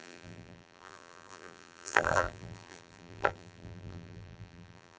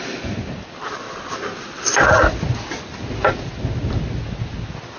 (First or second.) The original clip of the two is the second